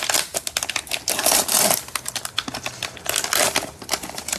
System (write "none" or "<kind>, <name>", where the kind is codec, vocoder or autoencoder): none